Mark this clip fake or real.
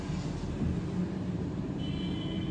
real